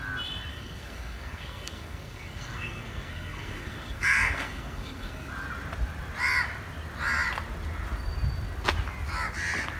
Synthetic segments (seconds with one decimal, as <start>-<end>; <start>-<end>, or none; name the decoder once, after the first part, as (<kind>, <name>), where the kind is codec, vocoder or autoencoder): 0.5-5.3 (codec, SNAC)

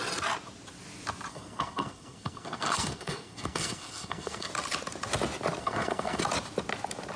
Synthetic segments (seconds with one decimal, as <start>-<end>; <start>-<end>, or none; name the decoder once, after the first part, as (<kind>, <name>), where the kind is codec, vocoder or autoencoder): 1.3-4.5 (codec, SNAC); 5.6-6.2

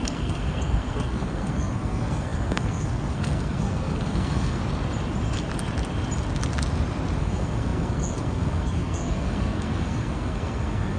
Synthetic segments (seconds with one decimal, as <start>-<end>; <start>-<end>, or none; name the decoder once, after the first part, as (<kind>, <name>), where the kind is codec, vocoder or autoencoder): 0.0-4.6 (codec, SNAC); 7.2-11.0

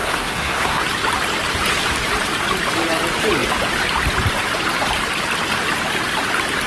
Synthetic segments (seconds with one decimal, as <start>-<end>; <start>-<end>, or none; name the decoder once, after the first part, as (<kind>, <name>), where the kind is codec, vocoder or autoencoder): 0.0-0.8 (codec, SNAC)